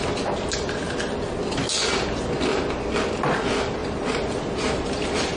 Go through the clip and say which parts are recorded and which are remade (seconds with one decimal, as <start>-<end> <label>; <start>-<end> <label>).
0.0-3.8 recorded; 3.8-5.4 remade